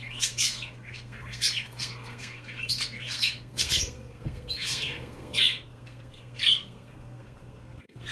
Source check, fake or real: fake